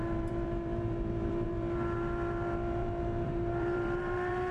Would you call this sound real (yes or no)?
no